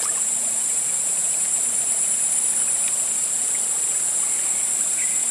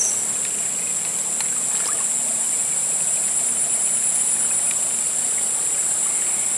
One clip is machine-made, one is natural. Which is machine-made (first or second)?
first